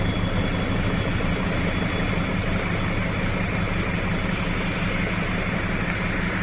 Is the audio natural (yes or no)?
yes